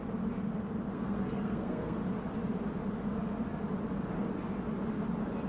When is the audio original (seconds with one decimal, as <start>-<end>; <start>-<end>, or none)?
0.0-0.9; 2.0-5.5